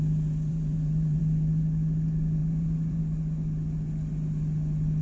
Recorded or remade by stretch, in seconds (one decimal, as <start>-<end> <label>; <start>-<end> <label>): 0.0-0.5 recorded; 0.5-1.2 remade; 1.2-2.4 recorded; 2.4-3.0 remade; 3.0-5.0 recorded